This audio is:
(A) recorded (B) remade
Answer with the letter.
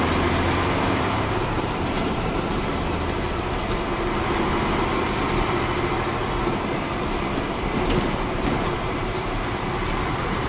B